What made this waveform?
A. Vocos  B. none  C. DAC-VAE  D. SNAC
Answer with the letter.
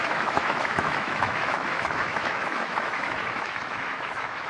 C